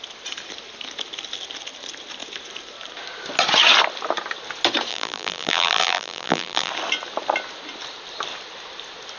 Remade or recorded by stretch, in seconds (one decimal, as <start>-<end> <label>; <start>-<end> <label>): 0.0-4.9 recorded; 4.9-6.7 remade; 6.7-9.2 recorded